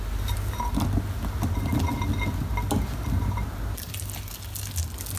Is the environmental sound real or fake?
real